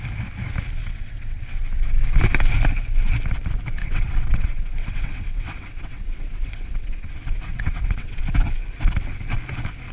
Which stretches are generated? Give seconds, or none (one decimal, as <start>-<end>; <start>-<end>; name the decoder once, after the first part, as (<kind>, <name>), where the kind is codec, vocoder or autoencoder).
0.8-1.4 (vocoder, WaveNeXt); 3.8-7.1; 7.5-8.2